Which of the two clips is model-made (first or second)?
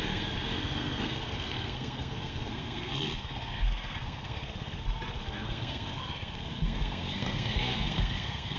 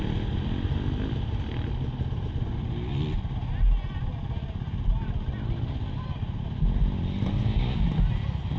first